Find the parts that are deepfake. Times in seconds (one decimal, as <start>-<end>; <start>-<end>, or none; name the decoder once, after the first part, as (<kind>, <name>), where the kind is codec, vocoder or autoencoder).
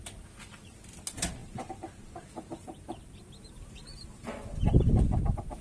1.4-4.8 (vocoder, BigVGAN v2)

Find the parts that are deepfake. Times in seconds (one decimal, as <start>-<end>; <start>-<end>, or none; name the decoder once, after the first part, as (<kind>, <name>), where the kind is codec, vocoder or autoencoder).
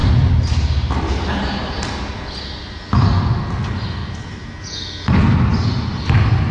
0.0-1.8 (vocoder, BigVGAN v2); 4.0-4.6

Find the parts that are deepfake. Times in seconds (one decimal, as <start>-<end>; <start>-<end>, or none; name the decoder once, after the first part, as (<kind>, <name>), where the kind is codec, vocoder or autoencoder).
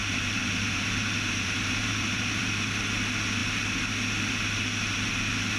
0.0-2.5 (vocoder, BigVGAN v2)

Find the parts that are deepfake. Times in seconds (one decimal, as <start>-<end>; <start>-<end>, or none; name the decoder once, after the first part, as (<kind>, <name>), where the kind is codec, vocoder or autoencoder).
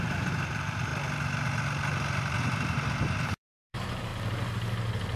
0.0-0.9 (vocoder, BigVGAN v2); 2.4-4.1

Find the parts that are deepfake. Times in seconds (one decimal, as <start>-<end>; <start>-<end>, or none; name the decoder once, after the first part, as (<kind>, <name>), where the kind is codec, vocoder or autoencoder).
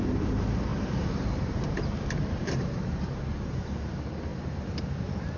0.0-4.3 (vocoder, BigVGAN v2)